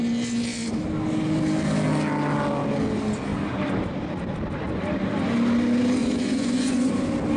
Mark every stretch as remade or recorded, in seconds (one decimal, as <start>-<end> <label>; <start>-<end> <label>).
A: 0.0-6.0 recorded; 6.0-6.9 remade; 6.9-7.4 recorded